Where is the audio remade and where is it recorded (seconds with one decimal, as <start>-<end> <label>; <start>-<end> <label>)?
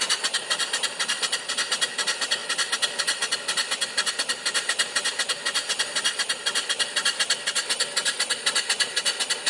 0.0-9.5 recorded